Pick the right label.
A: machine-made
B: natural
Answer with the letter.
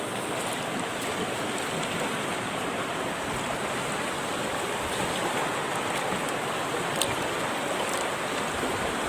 B